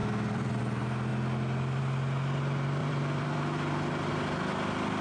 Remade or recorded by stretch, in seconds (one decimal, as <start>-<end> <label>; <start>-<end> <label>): 0.0-0.6 remade; 0.6-2.8 recorded; 2.8-4.1 remade; 4.1-5.0 recorded